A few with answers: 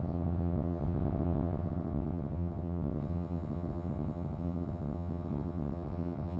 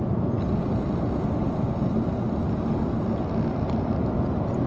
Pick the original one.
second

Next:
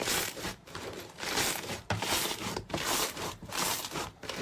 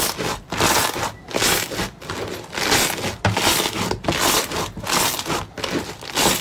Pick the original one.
second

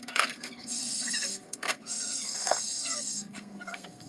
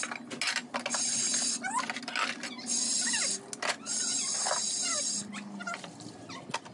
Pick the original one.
second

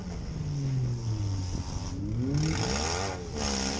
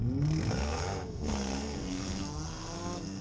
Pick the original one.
first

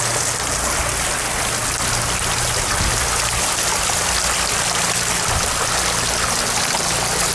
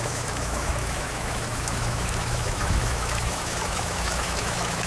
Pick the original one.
first